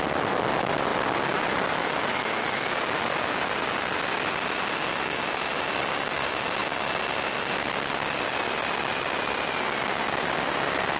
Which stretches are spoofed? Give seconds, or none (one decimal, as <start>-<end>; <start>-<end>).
none